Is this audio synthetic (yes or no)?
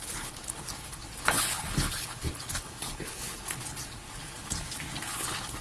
yes